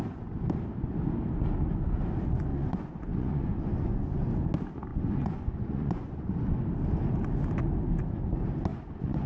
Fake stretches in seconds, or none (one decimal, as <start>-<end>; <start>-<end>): 2.5-4.3; 4.9-6.6; 8.7-9.3